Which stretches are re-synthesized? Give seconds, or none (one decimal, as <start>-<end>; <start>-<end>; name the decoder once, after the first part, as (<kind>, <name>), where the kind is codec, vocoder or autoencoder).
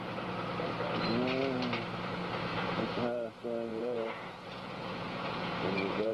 2.5-3.0 (vocoder, Vocos); 3.7-6.1